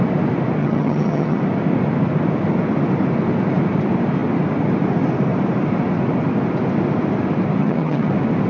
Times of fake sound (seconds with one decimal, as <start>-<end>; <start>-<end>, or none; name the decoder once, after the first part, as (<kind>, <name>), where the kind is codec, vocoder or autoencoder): 0.6-1.4 (vocoder, HiFi-GAN); 7.6-8.1